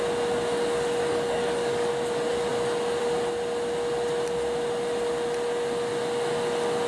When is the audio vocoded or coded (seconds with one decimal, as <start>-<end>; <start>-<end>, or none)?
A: 1.0-1.9